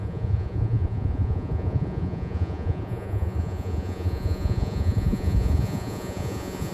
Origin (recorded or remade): remade